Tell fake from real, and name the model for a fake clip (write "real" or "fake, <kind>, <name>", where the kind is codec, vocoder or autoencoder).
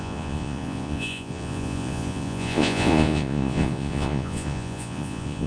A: fake, vocoder, Vocos